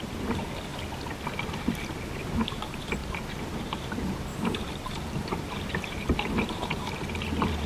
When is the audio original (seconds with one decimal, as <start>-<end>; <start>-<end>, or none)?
0.7-2.4